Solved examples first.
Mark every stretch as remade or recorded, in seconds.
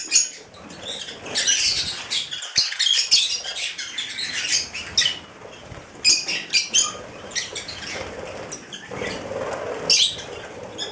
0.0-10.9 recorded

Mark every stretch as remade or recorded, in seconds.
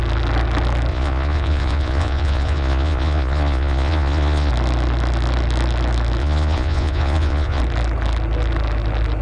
0.0-0.9 recorded; 0.9-4.5 remade; 4.5-6.2 recorded; 6.2-7.6 remade; 7.6-9.2 recorded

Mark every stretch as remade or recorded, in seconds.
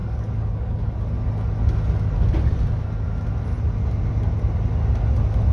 0.0-0.9 remade; 0.9-5.5 recorded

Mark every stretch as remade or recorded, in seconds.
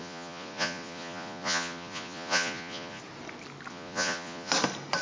0.0-3.0 remade; 3.0-3.7 recorded; 3.7-4.5 remade; 4.5-5.0 recorded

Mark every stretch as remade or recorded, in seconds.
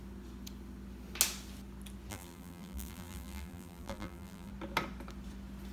0.0-2.1 recorded; 2.1-4.5 remade; 4.5-5.7 recorded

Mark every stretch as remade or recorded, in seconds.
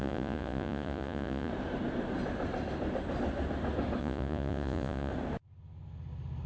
0.0-1.5 remade; 1.5-4.0 recorded; 4.0-5.1 remade; 5.1-6.5 recorded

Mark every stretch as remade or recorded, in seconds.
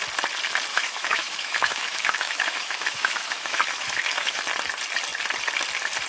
0.0-0.7 recorded; 0.7-4.4 remade; 4.4-6.1 recorded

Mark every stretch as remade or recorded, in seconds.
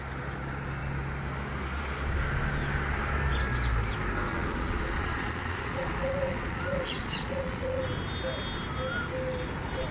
0.0-4.3 recorded; 4.3-7.8 remade; 7.8-9.9 recorded